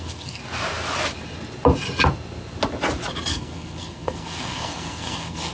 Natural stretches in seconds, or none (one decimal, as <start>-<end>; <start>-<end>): 0.4-3.3